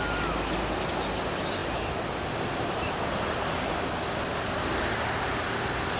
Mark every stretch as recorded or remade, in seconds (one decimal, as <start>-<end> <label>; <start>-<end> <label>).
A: 0.0-6.0 recorded